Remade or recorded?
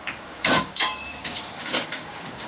remade